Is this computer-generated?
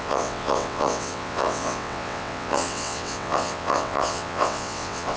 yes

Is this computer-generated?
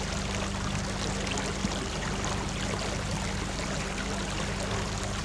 no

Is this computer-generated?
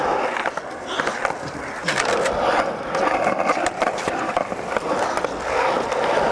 no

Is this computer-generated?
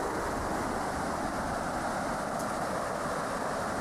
no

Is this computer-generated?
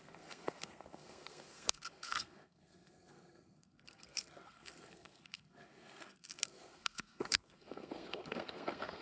yes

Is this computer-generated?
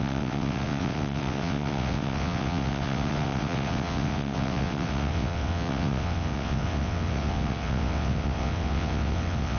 yes